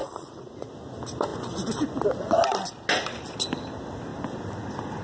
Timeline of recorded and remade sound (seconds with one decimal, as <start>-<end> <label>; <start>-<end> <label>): 0.0-0.7 remade; 0.7-5.0 recorded